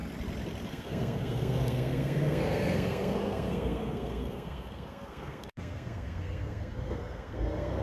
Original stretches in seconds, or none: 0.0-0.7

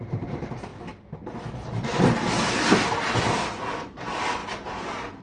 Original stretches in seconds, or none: 0.0-5.2